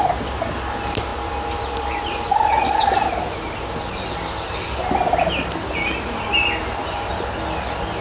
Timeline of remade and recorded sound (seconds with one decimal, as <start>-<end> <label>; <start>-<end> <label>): 0.0-8.0 recorded